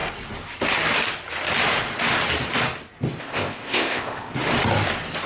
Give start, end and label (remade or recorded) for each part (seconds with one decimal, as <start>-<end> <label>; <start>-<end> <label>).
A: 0.0-3.2 recorded; 3.2-4.3 remade; 4.3-5.3 recorded